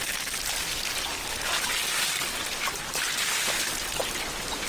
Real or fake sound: real